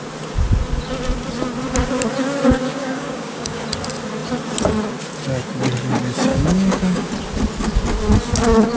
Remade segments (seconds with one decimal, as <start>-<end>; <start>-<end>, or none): 2.7-3.6; 6.3-7.1